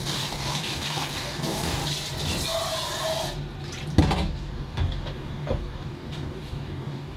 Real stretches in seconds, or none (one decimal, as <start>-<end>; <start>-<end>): 1.8-4.1